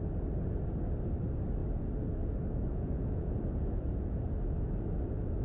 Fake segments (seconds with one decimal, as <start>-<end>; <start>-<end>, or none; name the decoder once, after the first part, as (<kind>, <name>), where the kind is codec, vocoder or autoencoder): 2.7-4.3 (vocoder, Vocos)